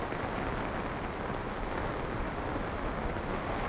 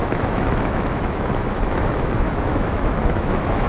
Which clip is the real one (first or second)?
first